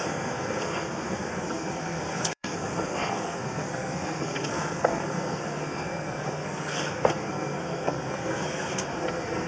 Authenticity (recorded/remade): remade